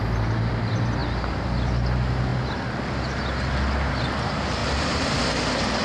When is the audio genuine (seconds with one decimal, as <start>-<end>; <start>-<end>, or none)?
0.0-4.6; 5.2-5.8